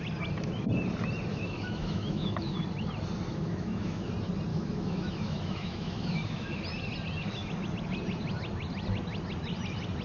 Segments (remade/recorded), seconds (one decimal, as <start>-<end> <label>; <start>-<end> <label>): 0.0-1.3 recorded; 1.3-2.6 remade; 2.6-3.3 recorded; 3.3-4.1 remade; 4.1-4.5 recorded; 4.5-6.6 remade; 6.6-10.0 recorded